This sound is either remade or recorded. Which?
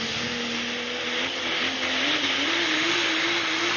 recorded